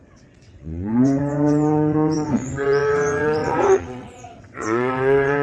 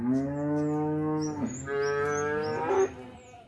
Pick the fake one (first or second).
first